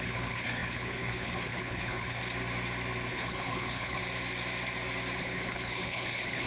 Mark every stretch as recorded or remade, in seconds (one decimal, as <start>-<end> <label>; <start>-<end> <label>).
0.0-2.2 remade; 2.2-3.1 recorded; 3.1-4.0 remade; 4.0-5.2 recorded; 5.2-6.5 remade